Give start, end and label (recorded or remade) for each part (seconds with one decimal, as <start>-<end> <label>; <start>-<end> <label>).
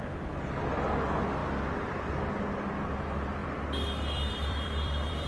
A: 0.0-3.4 recorded; 3.4-5.3 remade